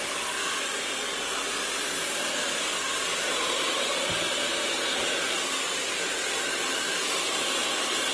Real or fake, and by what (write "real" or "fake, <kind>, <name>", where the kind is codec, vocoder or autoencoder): real